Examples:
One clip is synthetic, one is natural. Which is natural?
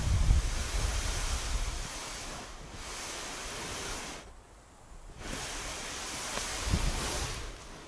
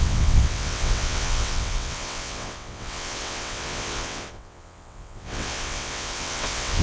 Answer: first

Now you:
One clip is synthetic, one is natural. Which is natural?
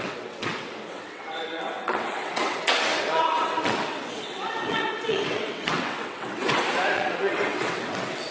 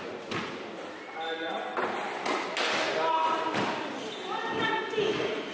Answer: second